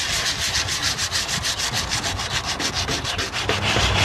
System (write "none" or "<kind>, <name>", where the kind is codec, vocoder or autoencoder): none